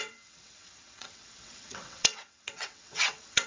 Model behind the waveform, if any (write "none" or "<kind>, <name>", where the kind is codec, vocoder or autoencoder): vocoder, WaveNeXt